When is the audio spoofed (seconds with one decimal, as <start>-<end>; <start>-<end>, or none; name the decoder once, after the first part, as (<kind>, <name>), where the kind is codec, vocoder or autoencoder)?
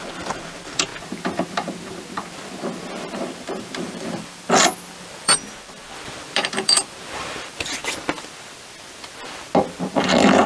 0.0-0.9 (vocoder, BigVGAN v2); 3.8-7.8